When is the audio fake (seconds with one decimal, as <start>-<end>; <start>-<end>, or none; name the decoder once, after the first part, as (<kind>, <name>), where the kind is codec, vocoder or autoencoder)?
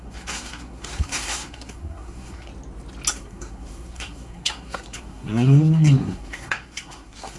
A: 0.0-2.5 (codec, SNAC); 3.1-7.4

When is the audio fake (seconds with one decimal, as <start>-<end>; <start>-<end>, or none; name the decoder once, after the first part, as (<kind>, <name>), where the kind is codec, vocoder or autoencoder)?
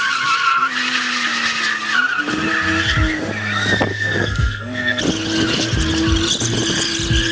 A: 3.9-5.0 (codec, SNAC)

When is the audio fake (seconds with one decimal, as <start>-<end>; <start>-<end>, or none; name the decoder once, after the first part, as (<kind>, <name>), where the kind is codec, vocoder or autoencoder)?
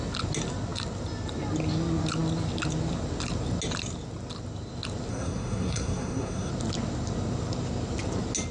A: 5.1-6.5 (codec, SNAC)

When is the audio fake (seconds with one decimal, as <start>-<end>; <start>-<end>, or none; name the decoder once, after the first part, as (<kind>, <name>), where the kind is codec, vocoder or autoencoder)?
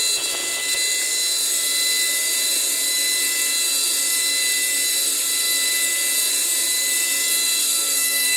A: 7.6-8.4 (codec, SNAC)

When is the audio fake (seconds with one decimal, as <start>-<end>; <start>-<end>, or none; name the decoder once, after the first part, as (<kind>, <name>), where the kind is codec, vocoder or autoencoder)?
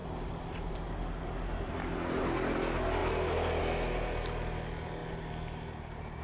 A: none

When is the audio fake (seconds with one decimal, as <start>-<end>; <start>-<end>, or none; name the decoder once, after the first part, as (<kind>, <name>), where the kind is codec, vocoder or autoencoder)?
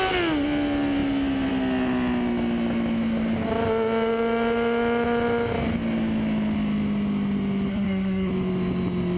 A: 7.7-8.3 (codec, SNAC)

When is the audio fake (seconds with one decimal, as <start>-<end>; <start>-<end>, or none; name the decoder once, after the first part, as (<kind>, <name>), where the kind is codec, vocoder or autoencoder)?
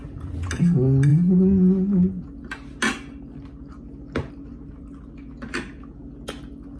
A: none